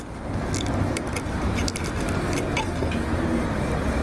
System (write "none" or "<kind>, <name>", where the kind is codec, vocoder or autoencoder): none